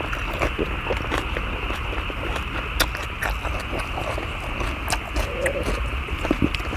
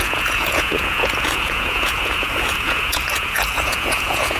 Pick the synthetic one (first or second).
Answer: second